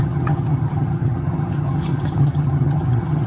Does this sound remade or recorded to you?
remade